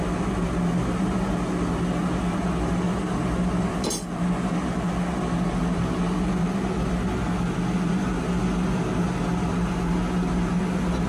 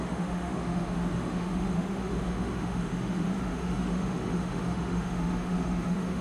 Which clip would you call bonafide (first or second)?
first